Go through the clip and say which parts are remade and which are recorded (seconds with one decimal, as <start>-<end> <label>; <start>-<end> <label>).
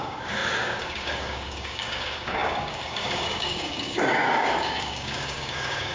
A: 0.0-5.9 remade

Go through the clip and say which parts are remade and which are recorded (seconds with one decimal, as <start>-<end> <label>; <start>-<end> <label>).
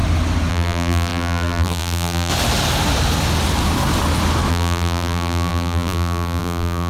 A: 0.0-0.5 recorded; 0.5-2.3 remade; 2.3-4.5 recorded; 4.5-6.9 remade